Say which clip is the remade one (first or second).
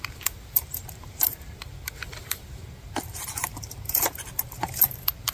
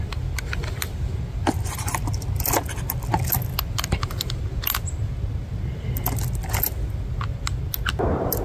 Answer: first